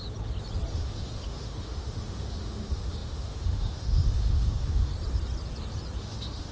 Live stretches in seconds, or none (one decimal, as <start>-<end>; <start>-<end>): 0.0-0.7; 4.9-6.0